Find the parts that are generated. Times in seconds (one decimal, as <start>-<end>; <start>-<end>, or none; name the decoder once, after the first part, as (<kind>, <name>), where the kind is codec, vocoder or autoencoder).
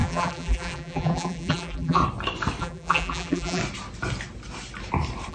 0.0-2.0 (vocoder, BigVGAN v2); 2.6-3.6